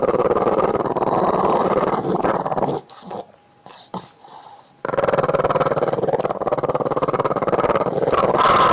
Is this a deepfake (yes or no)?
no